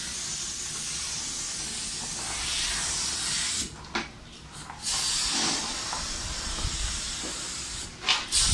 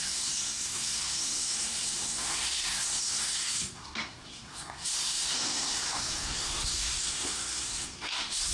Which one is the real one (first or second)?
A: first